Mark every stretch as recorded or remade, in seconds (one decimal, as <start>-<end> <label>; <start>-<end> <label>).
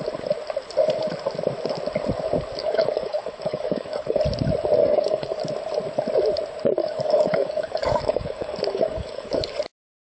0.0-2.6 recorded; 2.6-4.2 remade; 4.2-4.8 recorded; 4.8-5.4 remade; 5.4-6.8 recorded; 6.8-9.6 remade; 9.6-10.0 recorded